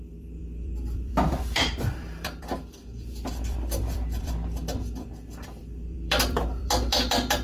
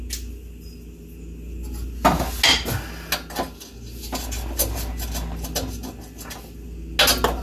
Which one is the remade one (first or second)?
first